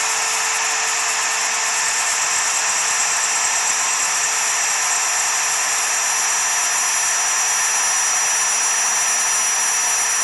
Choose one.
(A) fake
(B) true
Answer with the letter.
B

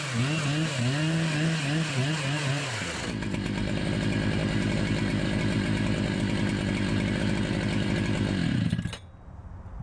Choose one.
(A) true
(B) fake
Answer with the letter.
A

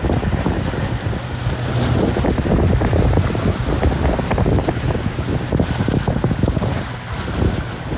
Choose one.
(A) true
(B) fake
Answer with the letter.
A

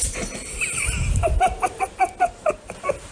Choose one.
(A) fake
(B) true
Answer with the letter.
B